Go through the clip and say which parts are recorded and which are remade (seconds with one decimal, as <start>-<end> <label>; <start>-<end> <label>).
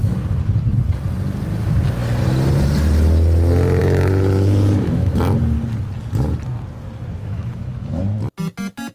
0.0-3.8 recorded; 3.8-5.2 remade; 5.2-7.2 recorded; 7.2-8.0 remade; 8.0-8.9 recorded